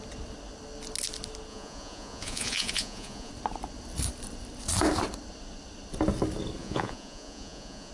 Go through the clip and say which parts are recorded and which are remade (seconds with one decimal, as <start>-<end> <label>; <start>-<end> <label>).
0.0-1.5 recorded; 1.5-3.3 remade; 3.3-6.6 recorded; 6.6-7.9 remade